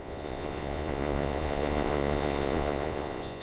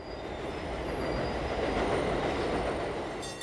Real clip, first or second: second